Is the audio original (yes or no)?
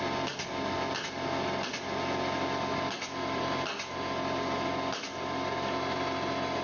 yes